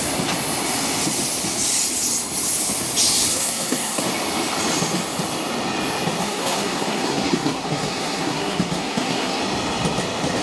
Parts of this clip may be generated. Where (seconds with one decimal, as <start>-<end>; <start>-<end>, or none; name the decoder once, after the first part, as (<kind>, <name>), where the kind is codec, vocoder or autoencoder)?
3.3-4.0 (codec, SNAC); 6.2-9.4